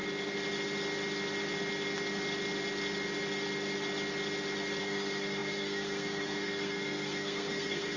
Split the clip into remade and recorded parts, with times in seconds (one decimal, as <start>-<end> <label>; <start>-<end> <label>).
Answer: 0.0-4.8 recorded; 4.8-8.0 remade